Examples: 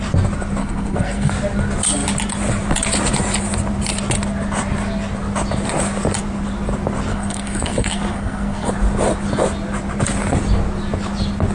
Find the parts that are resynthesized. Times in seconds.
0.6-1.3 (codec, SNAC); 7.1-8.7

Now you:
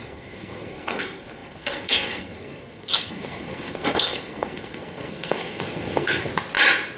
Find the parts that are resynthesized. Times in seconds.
0.0-6.3 (codec, SNAC)

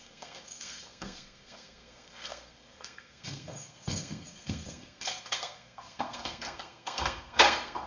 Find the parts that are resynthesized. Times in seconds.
0.0-7.9 (codec, SNAC)